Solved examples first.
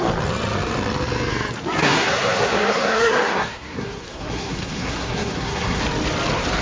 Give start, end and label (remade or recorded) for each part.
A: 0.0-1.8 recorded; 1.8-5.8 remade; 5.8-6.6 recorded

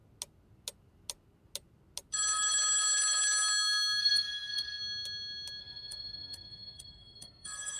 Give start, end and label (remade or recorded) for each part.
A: 0.0-4.0 recorded; 4.0-4.8 remade; 4.8-5.6 recorded; 5.6-7.8 remade

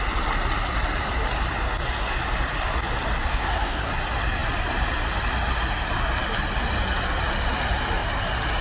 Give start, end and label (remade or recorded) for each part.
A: 0.0-3.3 recorded; 3.3-3.9 remade; 3.9-8.6 recorded

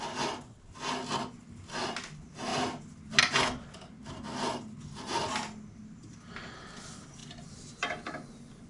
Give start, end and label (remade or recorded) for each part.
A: 0.0-8.7 recorded

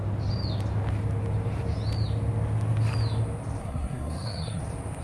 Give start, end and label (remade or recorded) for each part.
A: 0.0-3.6 recorded; 3.6-4.6 remade; 4.6-5.0 recorded

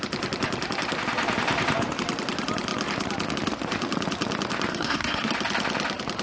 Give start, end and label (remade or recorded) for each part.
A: 0.0-4.7 recorded; 4.7-5.3 remade; 5.3-6.2 recorded